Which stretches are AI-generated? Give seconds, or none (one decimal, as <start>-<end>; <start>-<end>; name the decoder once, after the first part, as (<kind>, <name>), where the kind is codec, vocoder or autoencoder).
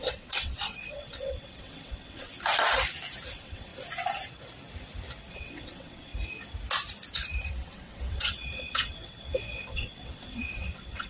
0.0-2.3 (vocoder, WaveNeXt); 3.3-3.7; 5.3-6.1; 7.5-11.1